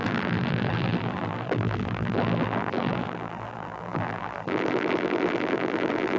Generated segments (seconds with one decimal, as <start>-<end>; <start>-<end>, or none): 0.0-6.2